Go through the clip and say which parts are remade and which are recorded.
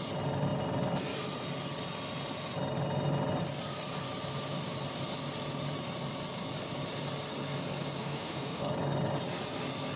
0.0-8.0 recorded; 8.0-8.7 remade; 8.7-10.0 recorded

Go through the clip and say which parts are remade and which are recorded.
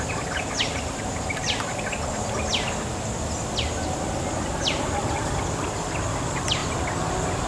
0.0-7.5 recorded